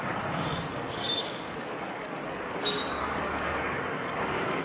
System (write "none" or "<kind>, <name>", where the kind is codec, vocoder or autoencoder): codec, DAC